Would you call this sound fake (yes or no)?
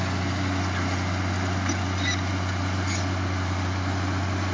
no